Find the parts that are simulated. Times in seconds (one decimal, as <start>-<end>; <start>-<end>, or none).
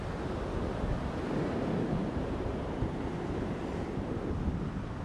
2.0-3.6